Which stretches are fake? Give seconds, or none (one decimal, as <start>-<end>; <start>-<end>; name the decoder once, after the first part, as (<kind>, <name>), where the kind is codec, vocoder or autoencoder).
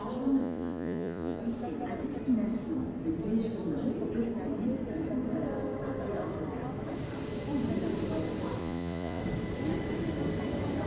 0.4-1.4 (vocoder, Vocos); 8.6-9.2